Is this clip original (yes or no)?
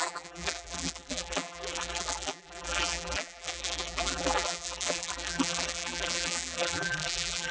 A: no